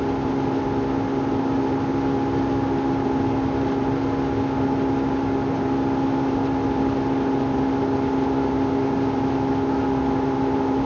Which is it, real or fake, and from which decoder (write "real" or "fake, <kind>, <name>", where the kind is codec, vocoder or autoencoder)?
real